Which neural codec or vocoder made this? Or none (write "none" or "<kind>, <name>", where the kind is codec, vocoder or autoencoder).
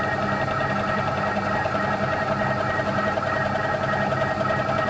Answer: none